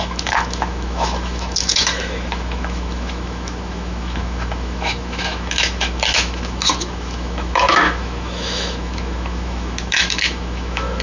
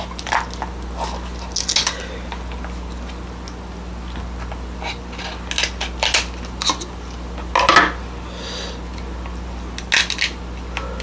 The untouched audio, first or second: second